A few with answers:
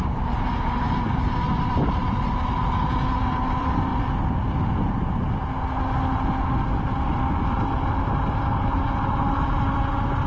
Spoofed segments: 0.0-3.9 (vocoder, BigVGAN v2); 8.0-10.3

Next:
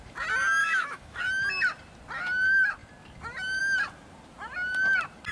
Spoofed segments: 0.6-1.2 (autoencoder, DAC-VAE)

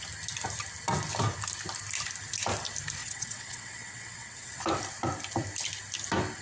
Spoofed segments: 3.0-4.6 (vocoder, WaveNeXt)

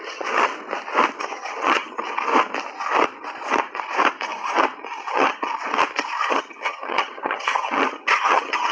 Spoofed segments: 0.0-0.5 (vocoder, HiFi-GAN); 1.2-2.3; 5.1-5.5; 6.3-8.7

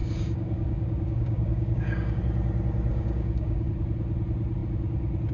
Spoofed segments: 0.0-2.2 (codec, DAC); 2.9-3.7

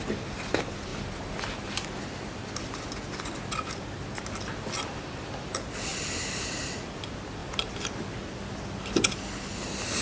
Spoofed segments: 0.9-1.5 (vocoder, BigVGAN v2); 7.4-10.0